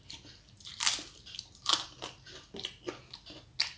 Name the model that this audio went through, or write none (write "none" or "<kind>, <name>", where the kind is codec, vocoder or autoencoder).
none